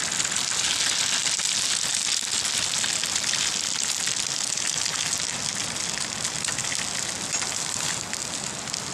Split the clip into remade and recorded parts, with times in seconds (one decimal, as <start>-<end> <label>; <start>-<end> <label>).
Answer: 0.0-8.9 recorded